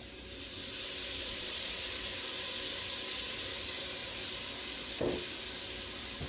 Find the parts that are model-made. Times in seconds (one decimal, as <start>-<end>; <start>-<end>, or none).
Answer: 1.2-1.8